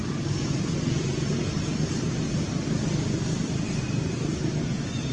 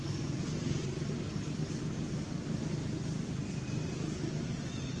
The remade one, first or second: first